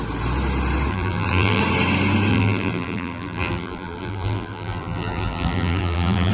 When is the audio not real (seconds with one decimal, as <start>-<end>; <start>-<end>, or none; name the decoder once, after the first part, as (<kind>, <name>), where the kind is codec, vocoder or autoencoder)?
0.9-1.6 (vocoder, BigVGAN v2); 2.3-6.3